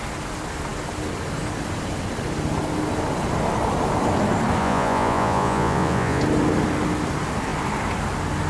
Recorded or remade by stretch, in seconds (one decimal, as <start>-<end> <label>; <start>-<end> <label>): 0.0-4.6 recorded; 4.6-6.2 remade; 6.2-8.5 recorded